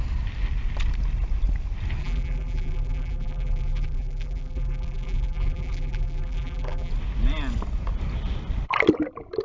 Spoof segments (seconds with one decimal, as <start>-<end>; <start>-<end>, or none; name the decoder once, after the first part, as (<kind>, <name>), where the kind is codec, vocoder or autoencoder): 2.0-6.9 (vocoder, BigVGAN v2)